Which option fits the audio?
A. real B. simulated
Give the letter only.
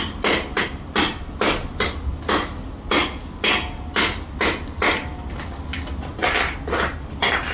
A